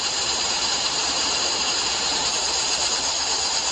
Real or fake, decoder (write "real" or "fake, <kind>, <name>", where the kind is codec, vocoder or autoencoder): fake, vocoder, BigVGAN v2